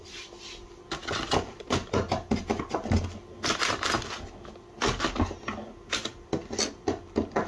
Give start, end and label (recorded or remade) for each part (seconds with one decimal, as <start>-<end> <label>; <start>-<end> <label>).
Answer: 0.0-7.5 recorded